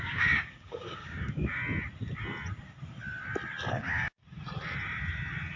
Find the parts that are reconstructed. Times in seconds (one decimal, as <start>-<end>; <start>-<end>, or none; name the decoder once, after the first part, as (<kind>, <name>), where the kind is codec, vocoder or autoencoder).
0.0-1.6 (codec, DAC); 3.7-4.2

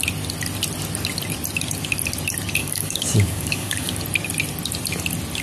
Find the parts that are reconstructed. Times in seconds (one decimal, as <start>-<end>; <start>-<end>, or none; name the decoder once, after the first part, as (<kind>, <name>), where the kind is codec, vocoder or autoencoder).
2.6-4.0 (codec, DAC)

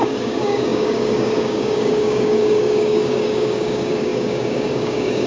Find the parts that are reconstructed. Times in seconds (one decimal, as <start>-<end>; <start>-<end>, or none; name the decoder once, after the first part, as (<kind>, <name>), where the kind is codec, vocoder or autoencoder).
0.0-5.3 (codec, DAC)

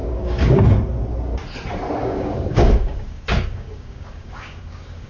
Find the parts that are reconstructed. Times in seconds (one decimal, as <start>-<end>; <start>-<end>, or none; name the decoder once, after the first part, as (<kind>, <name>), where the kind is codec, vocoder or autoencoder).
0.0-0.6 (codec, DAC); 2.0-5.1

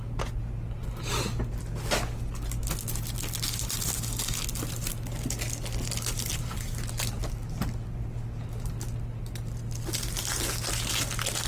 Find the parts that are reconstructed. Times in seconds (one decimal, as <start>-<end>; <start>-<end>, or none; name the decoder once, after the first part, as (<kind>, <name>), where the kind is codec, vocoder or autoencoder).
none

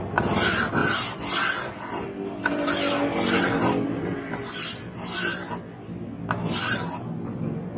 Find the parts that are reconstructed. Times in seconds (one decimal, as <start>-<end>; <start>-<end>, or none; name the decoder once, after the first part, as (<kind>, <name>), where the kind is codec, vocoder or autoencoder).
none

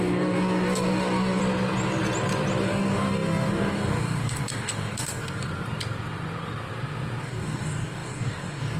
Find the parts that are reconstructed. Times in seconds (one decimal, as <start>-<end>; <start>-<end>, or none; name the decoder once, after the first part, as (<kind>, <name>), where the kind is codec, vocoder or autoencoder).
0.0-1.4 (codec, DAC); 2.6-5.5; 7.2-8.8